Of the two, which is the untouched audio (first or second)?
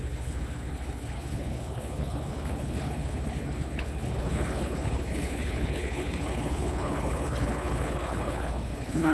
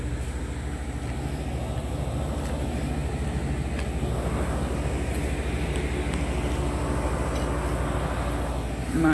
second